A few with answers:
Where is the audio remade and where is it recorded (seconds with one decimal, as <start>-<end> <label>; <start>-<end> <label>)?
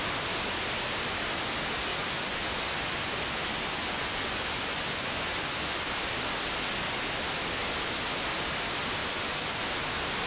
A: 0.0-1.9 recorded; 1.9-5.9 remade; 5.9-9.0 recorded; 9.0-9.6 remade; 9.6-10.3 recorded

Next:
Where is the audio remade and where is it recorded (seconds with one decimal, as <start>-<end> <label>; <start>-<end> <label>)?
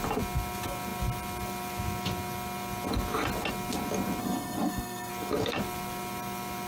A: 0.0-4.2 recorded; 4.2-5.1 remade; 5.1-6.7 recorded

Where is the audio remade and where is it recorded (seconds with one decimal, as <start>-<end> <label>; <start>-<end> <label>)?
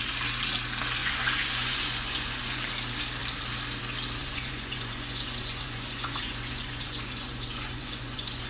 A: 0.0-1.0 recorded; 1.0-2.6 remade; 2.6-4.2 recorded; 4.2-8.5 remade